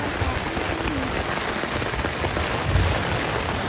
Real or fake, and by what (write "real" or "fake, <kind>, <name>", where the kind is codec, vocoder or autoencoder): real